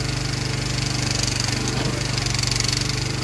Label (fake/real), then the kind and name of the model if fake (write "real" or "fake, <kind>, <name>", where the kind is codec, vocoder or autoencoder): real